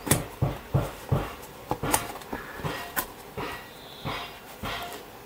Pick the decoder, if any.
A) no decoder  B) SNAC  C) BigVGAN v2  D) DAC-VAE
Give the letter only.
C